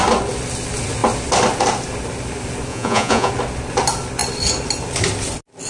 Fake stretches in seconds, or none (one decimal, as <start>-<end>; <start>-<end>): 2.7-3.3